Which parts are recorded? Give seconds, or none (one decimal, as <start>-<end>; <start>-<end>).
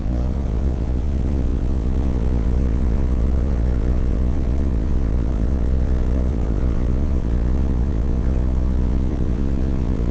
none